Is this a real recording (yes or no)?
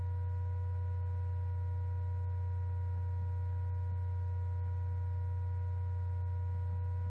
yes